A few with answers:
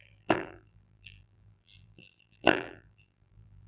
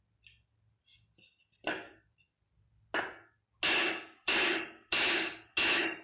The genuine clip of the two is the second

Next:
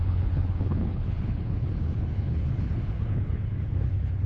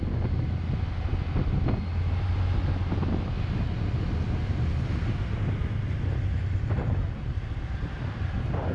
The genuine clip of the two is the second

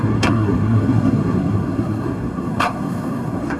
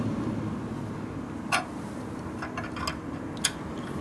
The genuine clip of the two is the second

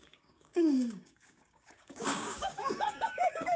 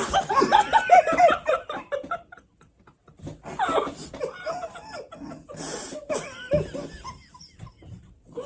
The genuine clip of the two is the second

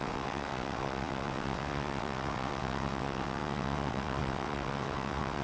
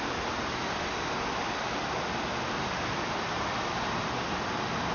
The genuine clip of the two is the second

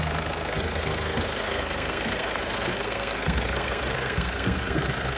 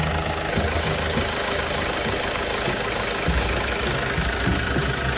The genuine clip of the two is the second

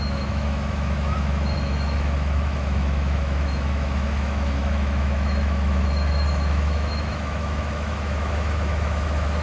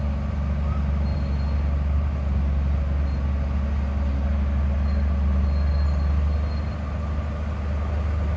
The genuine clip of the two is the second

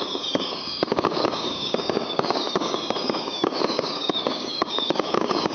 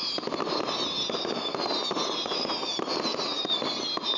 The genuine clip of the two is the second